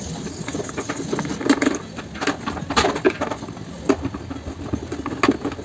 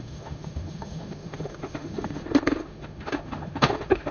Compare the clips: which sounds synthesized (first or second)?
second